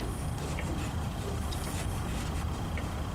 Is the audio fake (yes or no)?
no